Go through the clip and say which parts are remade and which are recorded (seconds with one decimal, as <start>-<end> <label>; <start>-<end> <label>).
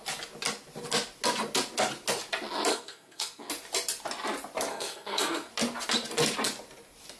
0.0-2.7 recorded; 2.7-3.5 remade; 3.5-4.7 recorded; 4.7-5.5 remade; 5.5-7.2 recorded